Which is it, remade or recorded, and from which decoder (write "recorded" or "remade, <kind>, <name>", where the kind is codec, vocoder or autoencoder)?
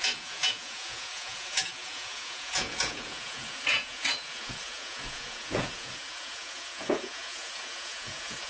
remade, vocoder, Vocos